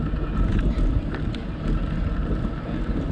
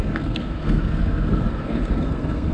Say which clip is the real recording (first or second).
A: first